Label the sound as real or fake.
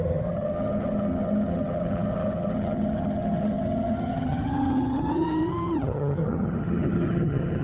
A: fake